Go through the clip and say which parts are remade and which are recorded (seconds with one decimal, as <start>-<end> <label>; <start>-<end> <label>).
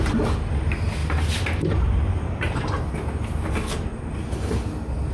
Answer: 0.0-5.1 recorded